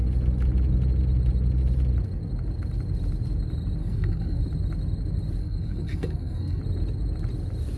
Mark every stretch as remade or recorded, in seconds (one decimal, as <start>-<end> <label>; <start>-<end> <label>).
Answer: 0.0-3.8 recorded; 3.8-4.4 remade; 4.4-5.4 recorded; 5.4-6.6 remade; 6.6-7.8 recorded